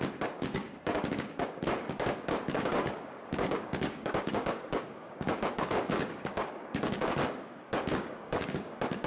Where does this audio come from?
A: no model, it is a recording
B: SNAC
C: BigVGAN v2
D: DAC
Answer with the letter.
D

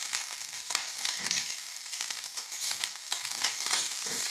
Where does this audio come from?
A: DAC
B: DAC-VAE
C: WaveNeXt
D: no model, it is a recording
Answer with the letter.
A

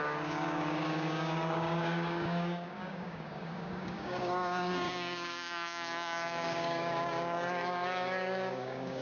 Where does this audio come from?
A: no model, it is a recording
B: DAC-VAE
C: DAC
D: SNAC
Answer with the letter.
C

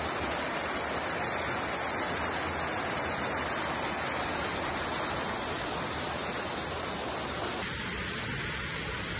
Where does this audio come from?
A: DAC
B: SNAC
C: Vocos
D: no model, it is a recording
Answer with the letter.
D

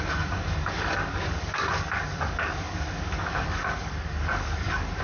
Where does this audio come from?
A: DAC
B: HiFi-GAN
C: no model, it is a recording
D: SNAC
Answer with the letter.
A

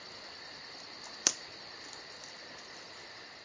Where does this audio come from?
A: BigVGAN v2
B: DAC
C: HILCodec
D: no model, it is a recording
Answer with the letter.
D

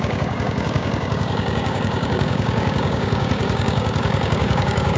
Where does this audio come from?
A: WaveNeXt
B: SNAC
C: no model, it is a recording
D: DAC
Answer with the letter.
D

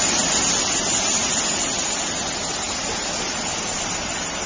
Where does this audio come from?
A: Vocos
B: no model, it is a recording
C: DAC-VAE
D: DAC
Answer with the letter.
B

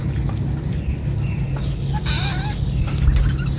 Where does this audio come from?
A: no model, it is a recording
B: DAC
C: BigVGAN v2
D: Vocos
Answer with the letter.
A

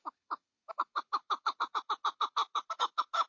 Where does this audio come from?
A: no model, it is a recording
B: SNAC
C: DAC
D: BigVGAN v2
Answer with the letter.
C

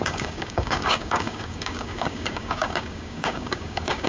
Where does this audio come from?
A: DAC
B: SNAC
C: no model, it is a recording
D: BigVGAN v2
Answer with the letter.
A